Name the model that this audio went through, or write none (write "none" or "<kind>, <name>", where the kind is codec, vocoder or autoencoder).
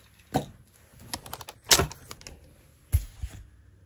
none